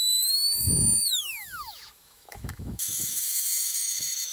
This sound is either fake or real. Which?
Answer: fake